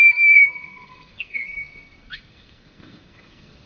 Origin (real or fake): fake